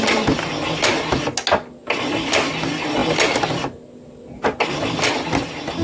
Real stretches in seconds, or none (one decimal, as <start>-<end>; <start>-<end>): 0.0-5.8

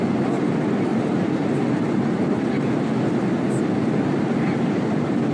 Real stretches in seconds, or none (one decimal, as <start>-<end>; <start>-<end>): 0.0-5.3

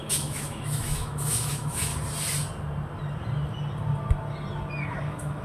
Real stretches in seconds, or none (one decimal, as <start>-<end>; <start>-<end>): 1.9-4.9

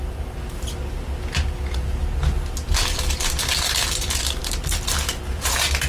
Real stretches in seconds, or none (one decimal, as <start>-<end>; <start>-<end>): 0.0-5.9

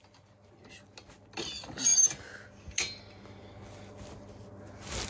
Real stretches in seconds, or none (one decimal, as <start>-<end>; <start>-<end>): 0.0-5.1

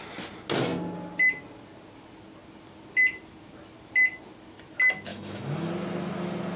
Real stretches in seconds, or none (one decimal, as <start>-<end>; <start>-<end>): 0.0-5.1; 5.7-6.6

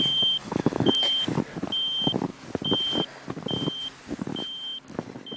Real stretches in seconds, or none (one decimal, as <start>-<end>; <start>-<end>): 0.0-0.4; 0.9-5.4

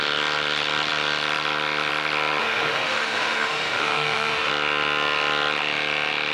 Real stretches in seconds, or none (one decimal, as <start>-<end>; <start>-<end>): 0.0-2.4; 4.5-6.3